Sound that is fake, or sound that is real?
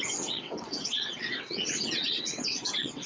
fake